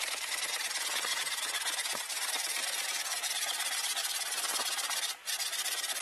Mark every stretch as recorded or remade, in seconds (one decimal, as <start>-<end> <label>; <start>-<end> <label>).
0.0-1.1 recorded; 1.1-2.0 remade; 2.0-6.0 recorded